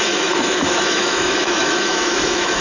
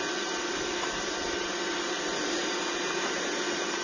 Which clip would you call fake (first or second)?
first